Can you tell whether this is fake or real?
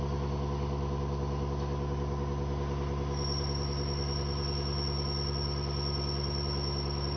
real